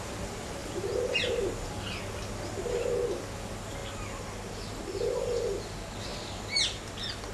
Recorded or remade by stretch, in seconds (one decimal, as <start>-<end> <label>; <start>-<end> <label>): 0.0-7.3 recorded